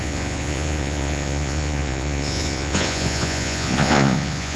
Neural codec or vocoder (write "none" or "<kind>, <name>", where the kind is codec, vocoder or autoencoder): vocoder, Vocos